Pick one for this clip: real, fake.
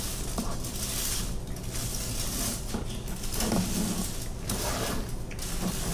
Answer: real